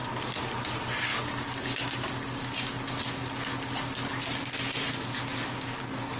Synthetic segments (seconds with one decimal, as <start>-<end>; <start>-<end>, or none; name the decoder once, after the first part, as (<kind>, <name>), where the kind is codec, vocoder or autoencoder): 0.5-1.1 (vocoder, BigVGAN v2); 4.8-6.2